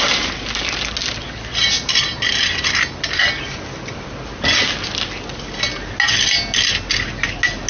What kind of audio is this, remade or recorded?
recorded